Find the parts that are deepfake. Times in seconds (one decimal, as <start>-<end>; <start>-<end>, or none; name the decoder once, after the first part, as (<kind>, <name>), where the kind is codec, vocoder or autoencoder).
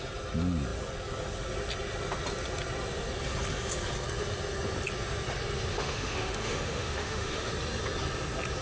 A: 5.7-7.5 (autoencoder, DAC-VAE)